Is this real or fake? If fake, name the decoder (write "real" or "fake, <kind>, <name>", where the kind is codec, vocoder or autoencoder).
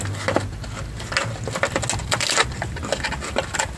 real